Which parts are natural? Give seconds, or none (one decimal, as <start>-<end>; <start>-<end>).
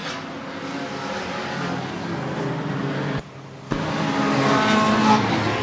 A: 0.0-5.6